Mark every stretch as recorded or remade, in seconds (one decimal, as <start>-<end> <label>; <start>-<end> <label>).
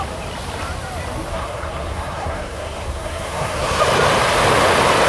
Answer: 0.0-1.3 recorded; 1.3-3.8 remade; 3.8-5.1 recorded